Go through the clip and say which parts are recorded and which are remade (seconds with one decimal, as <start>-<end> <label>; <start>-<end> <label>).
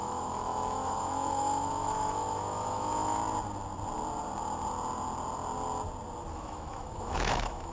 0.0-3.2 remade; 3.2-6.3 recorded; 6.3-7.7 remade